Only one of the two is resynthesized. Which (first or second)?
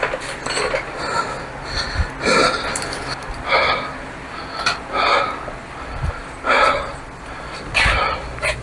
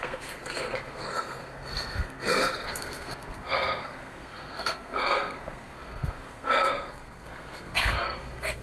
second